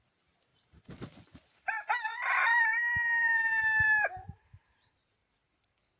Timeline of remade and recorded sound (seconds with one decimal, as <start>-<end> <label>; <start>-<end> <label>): 0.0-6.0 remade